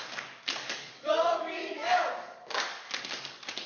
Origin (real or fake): fake